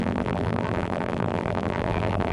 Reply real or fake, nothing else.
fake